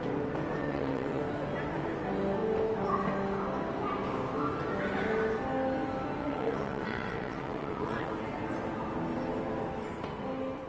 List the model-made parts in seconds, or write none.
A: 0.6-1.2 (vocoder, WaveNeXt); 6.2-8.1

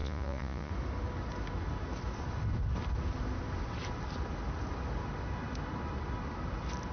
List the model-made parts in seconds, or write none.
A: 0.0-0.7 (vocoder, Vocos)

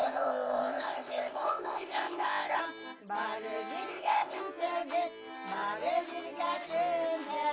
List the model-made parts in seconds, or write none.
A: 0.0-2.6 (codec, ZipCodec); 3.9-4.4

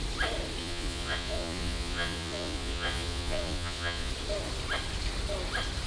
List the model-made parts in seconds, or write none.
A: 0.6-4.1 (vocoder, Vocos)